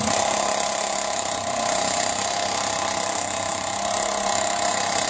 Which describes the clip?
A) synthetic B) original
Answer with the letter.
B